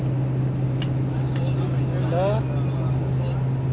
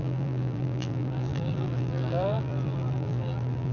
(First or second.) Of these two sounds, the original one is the first